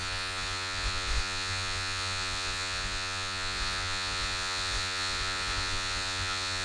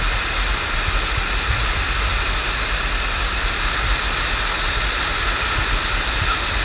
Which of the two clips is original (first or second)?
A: second